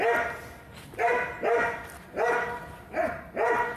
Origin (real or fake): real